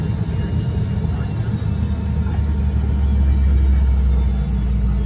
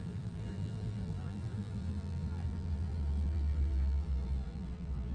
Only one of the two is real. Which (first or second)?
first